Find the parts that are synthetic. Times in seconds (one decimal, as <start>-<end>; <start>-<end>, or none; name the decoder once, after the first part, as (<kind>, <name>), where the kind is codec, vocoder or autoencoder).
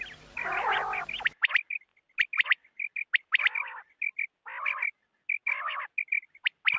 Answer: none